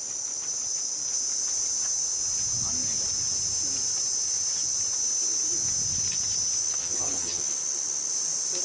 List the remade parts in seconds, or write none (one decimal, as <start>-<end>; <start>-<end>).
6.8-7.4